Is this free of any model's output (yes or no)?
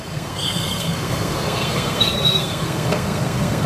no